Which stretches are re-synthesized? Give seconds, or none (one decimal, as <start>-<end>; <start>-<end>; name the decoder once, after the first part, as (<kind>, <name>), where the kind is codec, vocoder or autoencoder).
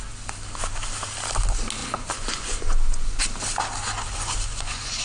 1.8-3.2 (vocoder, Vocos); 4.1-5.0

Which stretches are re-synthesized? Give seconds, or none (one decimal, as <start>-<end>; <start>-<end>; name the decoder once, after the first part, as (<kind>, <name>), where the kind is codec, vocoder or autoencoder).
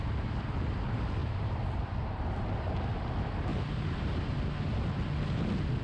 1.2-2.8 (vocoder, BigVGAN v2); 3.5-4.3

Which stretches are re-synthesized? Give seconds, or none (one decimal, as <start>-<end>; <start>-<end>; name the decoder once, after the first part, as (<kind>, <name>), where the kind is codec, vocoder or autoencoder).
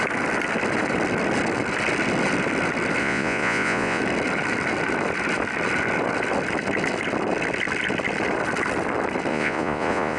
3.0-4.0 (vocoder, Vocos); 9.3-10.2